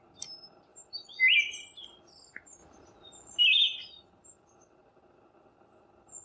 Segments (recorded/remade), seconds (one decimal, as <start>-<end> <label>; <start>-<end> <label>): 0.0-6.2 recorded